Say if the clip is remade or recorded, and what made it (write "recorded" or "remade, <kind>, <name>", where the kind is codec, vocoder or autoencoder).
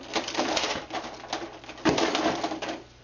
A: recorded